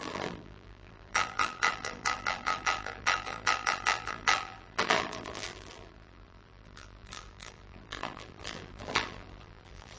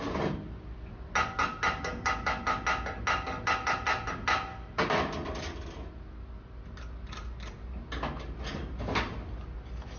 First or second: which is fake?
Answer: first